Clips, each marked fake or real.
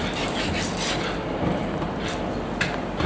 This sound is real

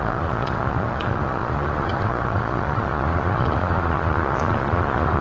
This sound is fake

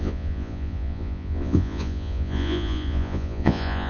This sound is fake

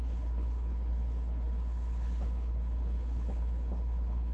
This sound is fake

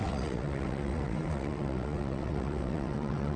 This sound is fake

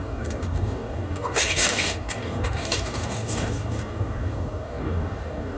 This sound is fake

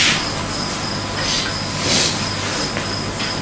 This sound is real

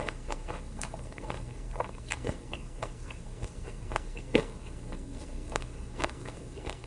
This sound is fake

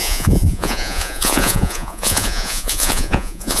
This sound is fake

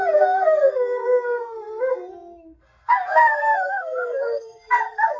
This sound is fake